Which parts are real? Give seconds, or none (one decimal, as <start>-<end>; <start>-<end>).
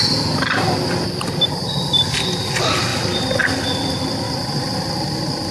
0.0-5.5